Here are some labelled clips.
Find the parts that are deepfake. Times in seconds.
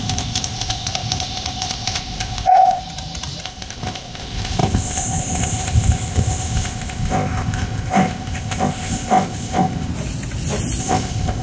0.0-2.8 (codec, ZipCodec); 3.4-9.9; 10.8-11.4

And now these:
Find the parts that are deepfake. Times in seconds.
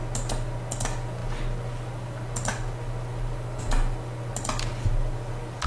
none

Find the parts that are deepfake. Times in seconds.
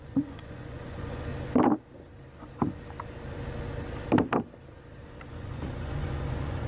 0.0-1.3 (vocoder, Vocos); 5.3-6.7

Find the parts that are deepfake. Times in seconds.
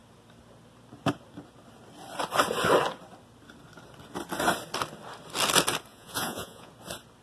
5.9-6.7 (vocoder, Vocos)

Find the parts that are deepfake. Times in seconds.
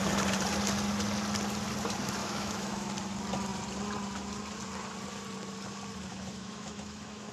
2.2-2.9 (autoencoder, DAC-VAE); 6.1-7.3